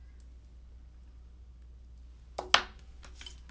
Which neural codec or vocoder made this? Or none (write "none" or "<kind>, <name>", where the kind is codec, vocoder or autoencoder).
none